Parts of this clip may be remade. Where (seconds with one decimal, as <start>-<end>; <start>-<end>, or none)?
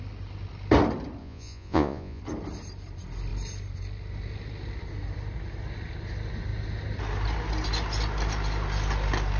1.2-2.2